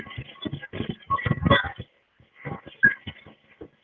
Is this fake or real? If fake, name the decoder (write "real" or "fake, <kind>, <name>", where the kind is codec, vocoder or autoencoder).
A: real